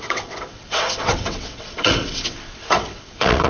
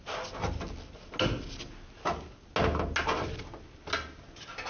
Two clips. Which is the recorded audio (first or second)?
second